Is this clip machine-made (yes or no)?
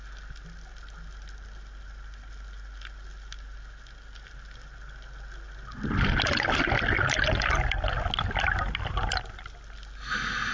no